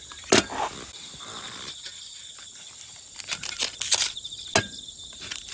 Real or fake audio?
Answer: real